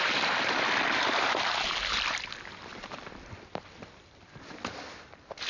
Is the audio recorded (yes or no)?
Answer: no